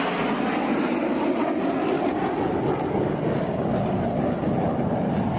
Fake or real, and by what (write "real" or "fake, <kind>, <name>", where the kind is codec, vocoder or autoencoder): real